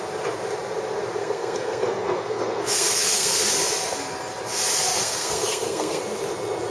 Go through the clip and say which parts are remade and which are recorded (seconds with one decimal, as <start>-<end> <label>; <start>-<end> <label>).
0.0-1.2 recorded; 1.2-3.4 remade; 3.4-5.0 recorded; 5.0-6.0 remade; 6.0-6.7 recorded